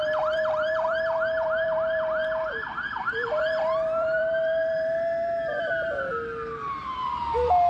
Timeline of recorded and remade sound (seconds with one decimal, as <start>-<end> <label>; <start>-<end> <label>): 0.0-2.2 remade; 2.2-2.9 recorded; 2.9-6.1 remade; 6.1-6.7 recorded; 6.7-7.7 remade